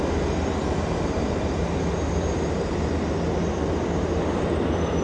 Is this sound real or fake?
real